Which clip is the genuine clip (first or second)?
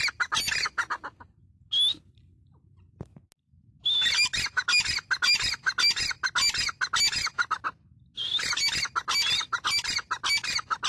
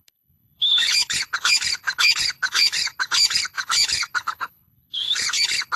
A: first